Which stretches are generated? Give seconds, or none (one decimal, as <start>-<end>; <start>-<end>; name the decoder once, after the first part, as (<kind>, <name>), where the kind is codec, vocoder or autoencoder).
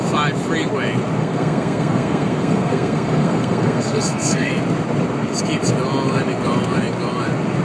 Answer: 1.2-4.5 (codec, SNAC)